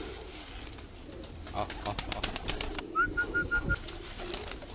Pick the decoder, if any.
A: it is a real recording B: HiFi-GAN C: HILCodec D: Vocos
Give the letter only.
A